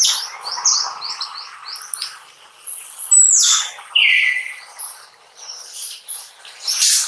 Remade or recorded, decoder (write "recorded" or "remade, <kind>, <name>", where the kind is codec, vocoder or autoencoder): recorded